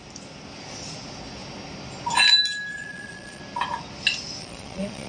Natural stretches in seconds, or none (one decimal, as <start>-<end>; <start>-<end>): 0.0-2.7; 3.4-4.4